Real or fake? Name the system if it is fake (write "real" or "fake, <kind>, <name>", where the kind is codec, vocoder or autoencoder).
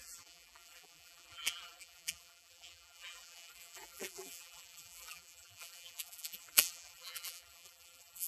fake, vocoder, BigVGAN v2